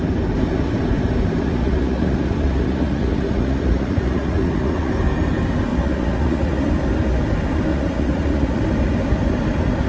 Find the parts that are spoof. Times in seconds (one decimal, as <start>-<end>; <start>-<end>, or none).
1.4-4.9; 5.7-6.7; 7.7-8.6